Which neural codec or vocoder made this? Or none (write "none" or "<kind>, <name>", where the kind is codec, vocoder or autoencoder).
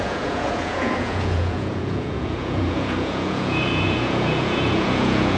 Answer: vocoder, Vocos